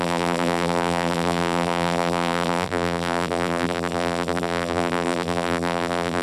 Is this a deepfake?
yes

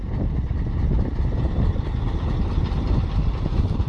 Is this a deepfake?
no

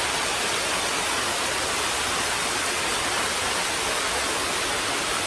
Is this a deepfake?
no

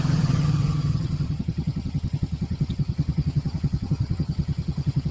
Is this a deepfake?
yes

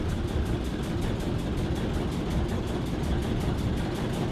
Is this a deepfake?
no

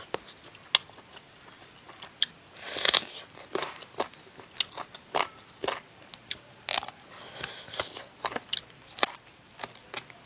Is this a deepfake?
no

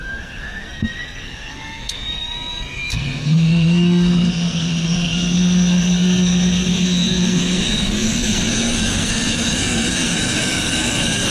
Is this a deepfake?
yes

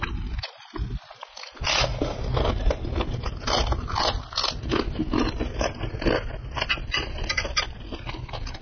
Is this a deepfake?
no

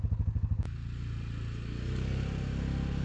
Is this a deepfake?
no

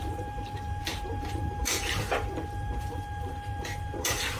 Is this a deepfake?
yes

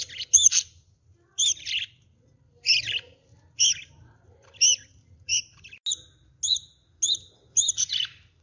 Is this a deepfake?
no